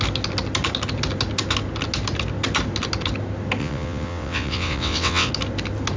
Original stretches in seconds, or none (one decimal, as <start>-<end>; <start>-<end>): 0.0-3.6; 5.3-6.0